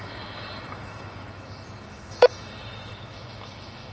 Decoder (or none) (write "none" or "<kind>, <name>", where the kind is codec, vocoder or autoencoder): autoencoder, DAC-VAE